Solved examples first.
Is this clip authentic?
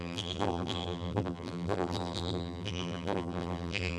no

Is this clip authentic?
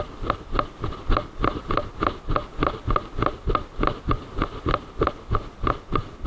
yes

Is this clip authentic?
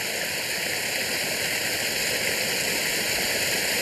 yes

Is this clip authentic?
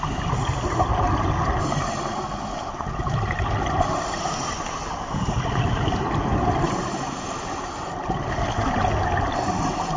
yes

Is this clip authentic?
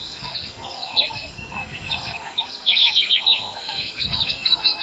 no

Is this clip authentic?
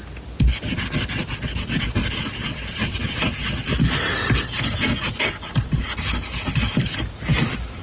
yes